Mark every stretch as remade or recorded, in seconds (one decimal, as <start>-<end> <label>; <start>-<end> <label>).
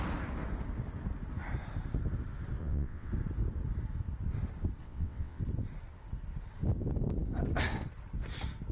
0.0-2.6 recorded; 2.6-3.1 remade; 3.1-4.8 recorded; 4.8-5.4 remade; 5.4-8.7 recorded